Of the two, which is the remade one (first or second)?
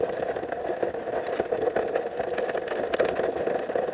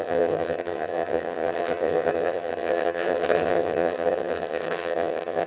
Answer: second